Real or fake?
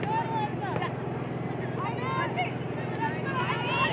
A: real